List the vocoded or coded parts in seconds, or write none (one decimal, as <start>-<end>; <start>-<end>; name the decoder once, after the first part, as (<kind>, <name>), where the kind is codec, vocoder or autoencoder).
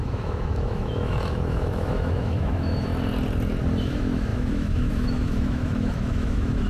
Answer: 0.0-2.9 (autoencoder, DAC-VAE); 3.8-6.7